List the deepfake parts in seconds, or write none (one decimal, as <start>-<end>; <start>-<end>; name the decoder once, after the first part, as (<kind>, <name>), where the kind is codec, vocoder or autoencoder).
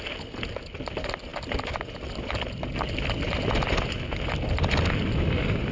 none